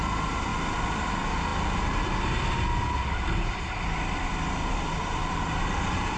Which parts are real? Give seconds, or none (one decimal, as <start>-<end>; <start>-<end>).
0.0-6.2